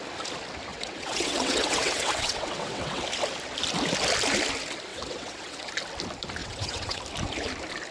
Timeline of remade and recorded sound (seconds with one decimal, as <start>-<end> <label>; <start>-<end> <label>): 0.0-0.7 recorded; 0.7-3.0 remade; 3.0-4.9 recorded; 4.9-5.7 remade; 5.7-6.4 recorded; 6.4-7.0 remade; 7.0-7.9 recorded